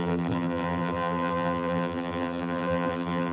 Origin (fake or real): fake